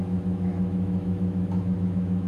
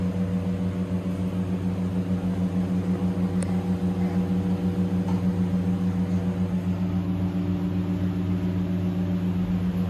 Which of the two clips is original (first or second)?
second